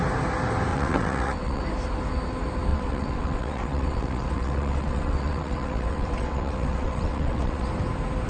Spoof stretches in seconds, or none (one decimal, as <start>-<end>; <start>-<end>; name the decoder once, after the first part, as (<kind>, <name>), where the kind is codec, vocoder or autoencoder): 0.7-1.6 (vocoder, WaveNeXt); 2.7-7.7